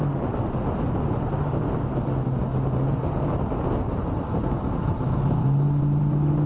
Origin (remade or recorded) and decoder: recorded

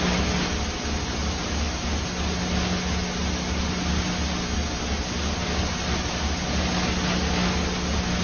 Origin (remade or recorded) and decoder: recorded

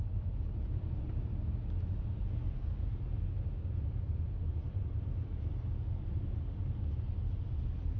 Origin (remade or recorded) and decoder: recorded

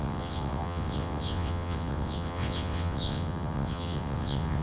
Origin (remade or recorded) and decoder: remade, vocoder, WaveNeXt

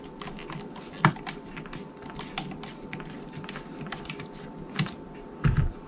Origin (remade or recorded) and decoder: recorded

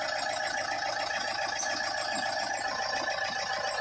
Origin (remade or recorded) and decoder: recorded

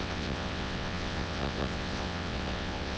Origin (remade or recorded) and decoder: remade, vocoder, WaveNeXt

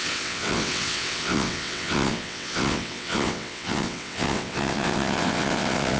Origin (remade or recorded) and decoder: remade, vocoder, WaveNeXt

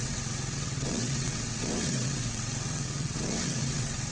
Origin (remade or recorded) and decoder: remade, vocoder, WaveNeXt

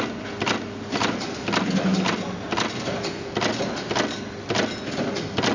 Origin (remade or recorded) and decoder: recorded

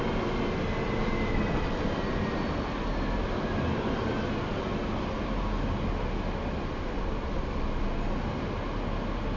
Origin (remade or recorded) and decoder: recorded